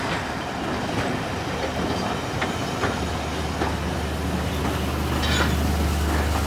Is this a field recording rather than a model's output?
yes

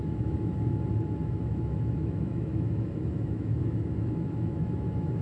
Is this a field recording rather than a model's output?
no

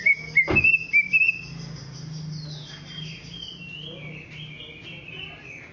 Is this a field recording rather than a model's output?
yes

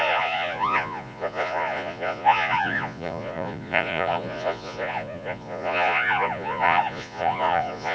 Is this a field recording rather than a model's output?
no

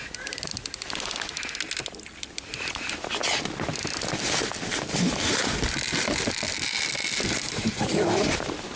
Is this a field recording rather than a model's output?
yes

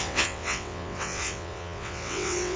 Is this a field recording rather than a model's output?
no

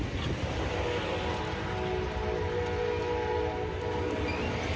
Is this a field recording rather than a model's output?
yes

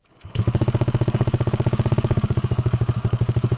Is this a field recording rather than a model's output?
no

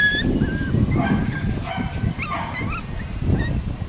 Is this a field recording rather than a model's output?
yes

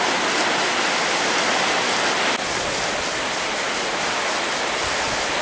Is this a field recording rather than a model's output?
yes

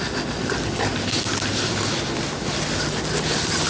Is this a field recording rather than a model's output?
yes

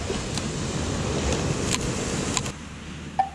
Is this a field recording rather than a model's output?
yes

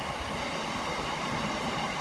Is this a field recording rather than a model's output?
yes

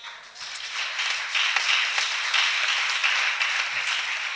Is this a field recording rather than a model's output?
yes